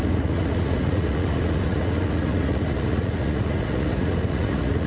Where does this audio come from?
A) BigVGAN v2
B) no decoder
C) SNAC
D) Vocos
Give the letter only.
D